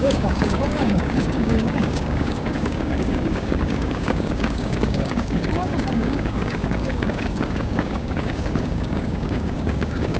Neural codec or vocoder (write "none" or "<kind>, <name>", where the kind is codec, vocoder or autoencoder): codec, DAC